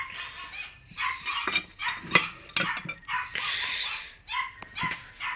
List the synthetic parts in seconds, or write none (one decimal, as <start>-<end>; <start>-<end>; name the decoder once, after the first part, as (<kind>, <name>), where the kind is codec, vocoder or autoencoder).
none